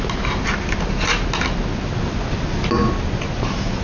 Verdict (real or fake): real